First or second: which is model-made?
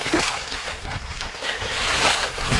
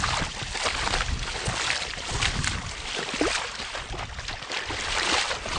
first